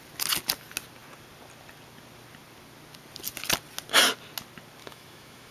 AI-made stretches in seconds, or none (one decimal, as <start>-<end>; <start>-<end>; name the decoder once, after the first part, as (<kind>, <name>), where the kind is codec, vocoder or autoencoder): 4.8-5.5 (autoencoder, DAC-VAE)